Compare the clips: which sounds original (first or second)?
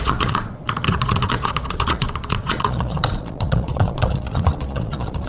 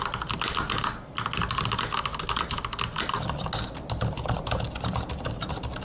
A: second